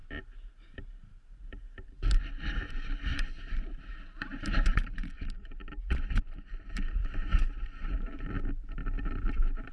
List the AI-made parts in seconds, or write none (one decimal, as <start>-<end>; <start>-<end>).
0.0-2.2; 3.1-8.1